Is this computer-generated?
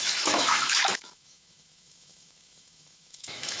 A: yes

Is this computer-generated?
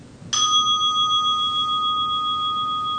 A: no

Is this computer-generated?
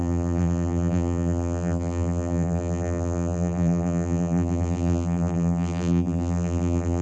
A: yes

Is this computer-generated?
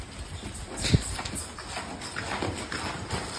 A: no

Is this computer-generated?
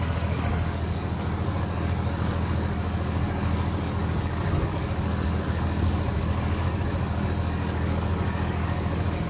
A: yes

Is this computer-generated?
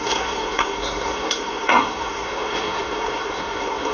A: yes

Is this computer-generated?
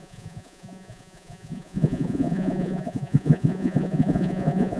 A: yes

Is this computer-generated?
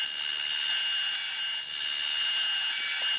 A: no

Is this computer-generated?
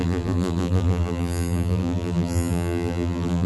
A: yes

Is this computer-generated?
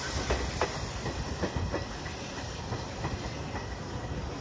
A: no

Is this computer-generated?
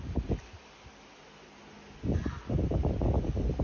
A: no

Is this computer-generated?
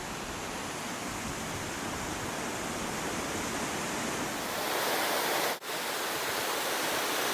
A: no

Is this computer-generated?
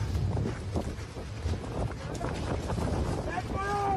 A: no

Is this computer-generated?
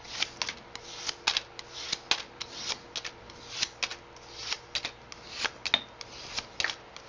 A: no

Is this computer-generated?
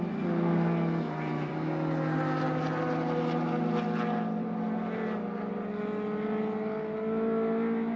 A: no